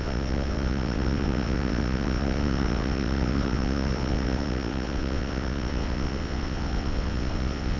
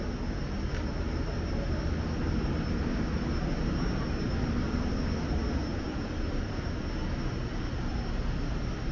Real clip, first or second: second